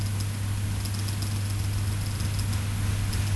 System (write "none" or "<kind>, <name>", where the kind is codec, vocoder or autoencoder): none